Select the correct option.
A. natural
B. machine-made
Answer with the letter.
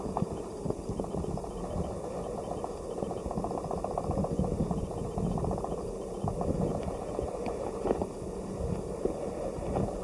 A